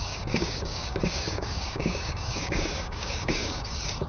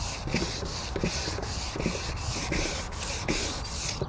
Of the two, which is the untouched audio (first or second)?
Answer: second